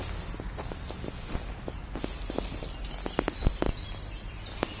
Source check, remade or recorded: recorded